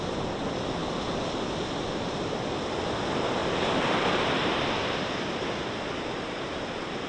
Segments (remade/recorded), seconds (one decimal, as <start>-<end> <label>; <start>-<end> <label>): 0.0-3.4 recorded; 3.4-5.0 remade; 5.0-7.1 recorded